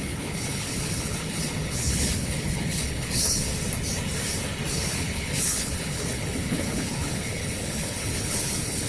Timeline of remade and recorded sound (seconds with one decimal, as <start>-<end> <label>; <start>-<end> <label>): 0.0-3.5 remade; 3.5-4.7 recorded; 4.7-8.9 remade